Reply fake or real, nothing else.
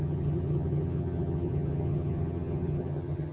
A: fake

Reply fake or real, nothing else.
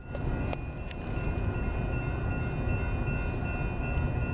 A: real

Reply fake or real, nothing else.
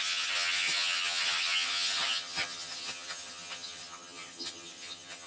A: fake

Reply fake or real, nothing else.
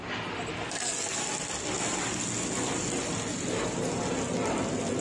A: real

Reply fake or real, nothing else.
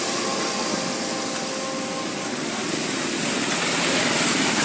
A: real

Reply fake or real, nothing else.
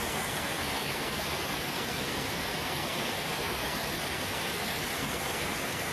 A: fake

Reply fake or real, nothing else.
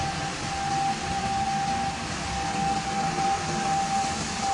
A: real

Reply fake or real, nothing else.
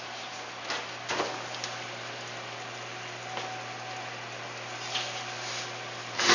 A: real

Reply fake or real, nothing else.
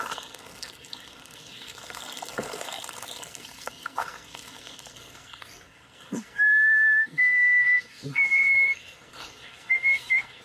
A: fake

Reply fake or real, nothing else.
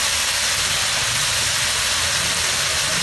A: real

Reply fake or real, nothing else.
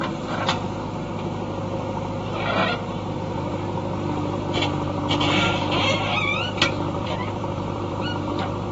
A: fake